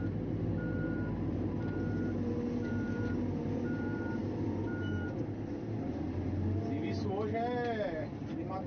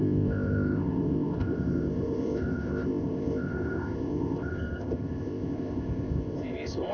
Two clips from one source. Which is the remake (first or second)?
second